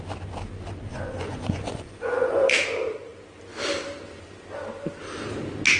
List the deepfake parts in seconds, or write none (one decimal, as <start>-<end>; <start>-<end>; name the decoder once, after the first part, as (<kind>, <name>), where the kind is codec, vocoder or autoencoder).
0.9-2.5 (vocoder, Vocos)